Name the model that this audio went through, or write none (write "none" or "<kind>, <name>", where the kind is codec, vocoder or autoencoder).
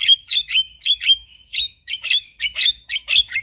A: autoencoder, DAC-VAE